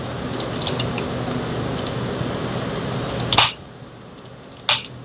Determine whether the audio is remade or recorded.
recorded